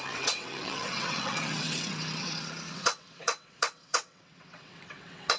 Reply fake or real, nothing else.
fake